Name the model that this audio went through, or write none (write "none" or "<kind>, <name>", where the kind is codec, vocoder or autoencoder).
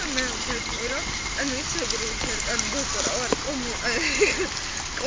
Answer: none